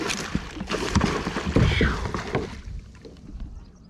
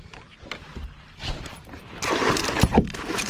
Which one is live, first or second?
first